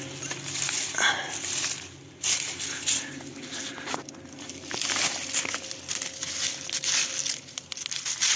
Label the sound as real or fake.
real